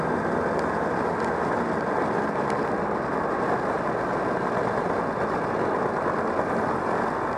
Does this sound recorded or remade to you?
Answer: recorded